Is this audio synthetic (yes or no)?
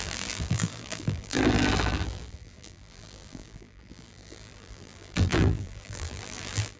yes